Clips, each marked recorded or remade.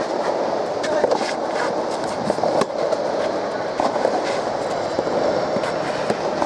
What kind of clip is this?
recorded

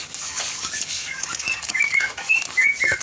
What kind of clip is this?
remade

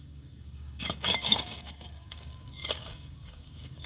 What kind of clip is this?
remade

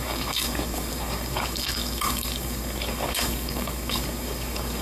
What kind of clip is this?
remade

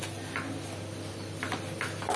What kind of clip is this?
recorded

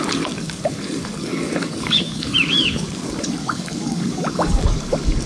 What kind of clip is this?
remade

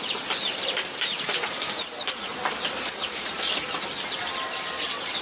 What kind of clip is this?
recorded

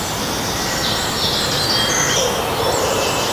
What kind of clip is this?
recorded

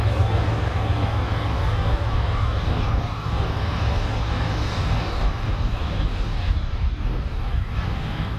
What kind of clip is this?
remade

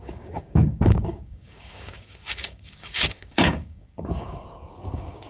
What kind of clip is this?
remade